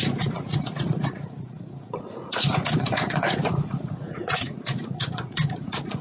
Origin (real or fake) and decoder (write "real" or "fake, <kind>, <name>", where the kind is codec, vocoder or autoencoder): fake, vocoder, Vocos